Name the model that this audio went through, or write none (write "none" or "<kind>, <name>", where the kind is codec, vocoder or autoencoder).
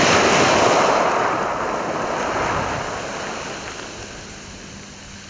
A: none